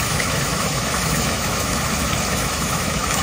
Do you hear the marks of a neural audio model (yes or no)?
yes